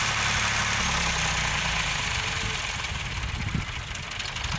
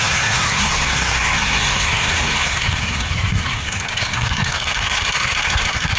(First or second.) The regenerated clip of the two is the second